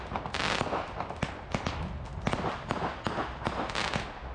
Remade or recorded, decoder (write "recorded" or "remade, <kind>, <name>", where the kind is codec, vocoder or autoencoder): recorded